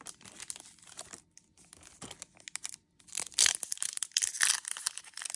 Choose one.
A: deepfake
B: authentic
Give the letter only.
B